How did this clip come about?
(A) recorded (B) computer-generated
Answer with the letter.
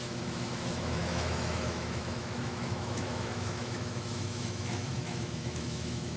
B